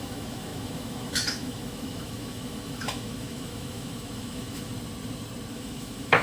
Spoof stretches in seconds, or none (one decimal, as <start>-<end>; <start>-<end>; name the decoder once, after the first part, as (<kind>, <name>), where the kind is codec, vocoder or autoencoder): 0.0-4.7 (autoencoder, DAC-VAE); 5.5-6.2